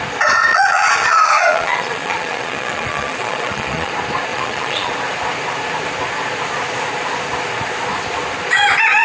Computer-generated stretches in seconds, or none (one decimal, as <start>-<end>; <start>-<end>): 0.5-3.9; 4.3-4.9